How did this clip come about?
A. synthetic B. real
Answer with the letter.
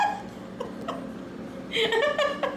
B